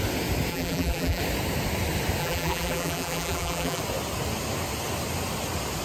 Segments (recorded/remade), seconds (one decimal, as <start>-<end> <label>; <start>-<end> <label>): 0.0-0.5 recorded; 0.5-1.2 remade; 1.2-2.2 recorded; 2.2-3.8 remade; 3.8-5.8 recorded